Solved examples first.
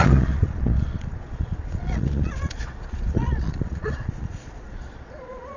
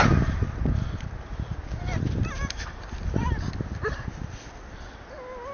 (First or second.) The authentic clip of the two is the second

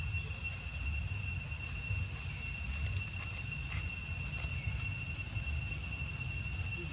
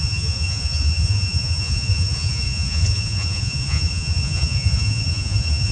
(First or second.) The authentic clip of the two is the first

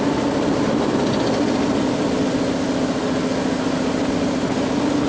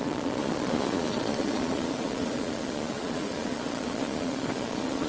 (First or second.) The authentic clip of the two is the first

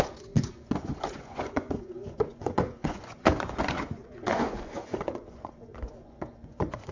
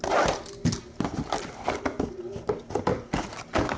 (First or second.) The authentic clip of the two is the second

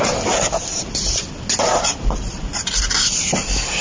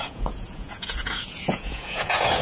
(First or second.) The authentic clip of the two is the first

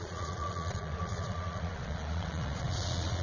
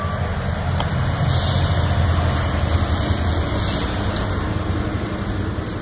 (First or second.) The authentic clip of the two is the second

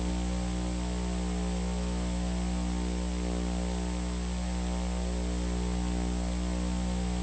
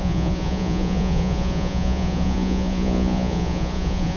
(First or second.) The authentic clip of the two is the first